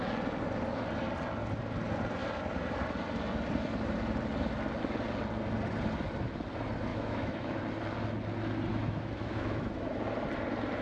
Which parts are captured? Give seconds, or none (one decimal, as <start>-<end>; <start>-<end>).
0.0-6.9; 7.6-8.7; 9.9-10.8